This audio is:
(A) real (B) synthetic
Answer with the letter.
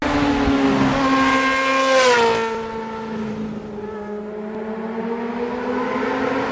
A